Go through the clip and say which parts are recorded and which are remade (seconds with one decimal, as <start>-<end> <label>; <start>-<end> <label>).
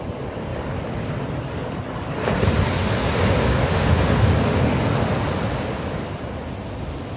0.0-3.5 recorded; 3.5-5.1 remade; 5.1-7.2 recorded